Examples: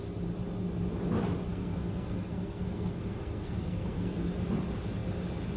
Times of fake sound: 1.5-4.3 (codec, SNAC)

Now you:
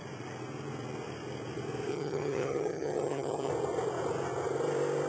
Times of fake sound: 1.9-3.5 (vocoder, HiFi-GAN)

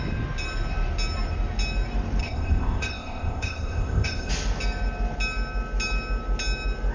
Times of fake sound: 2.2-4.3 (codec, ZipCodec)

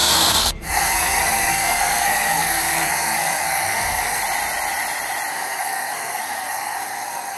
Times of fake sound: 0.0-4.2 (codec, SNAC); 5.3-7.4

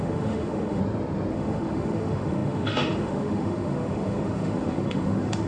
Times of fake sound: 0.0-0.8 (autoencoder, DAC-VAE); 1.3-5.5

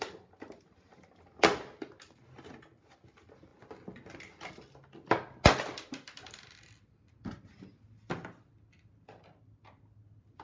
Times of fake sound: none

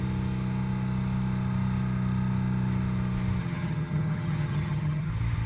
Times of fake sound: 3.4-5.1 (vocoder, HiFi-GAN)

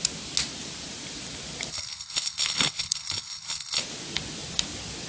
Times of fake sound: 1.7-3.8 (codec, HILCodec)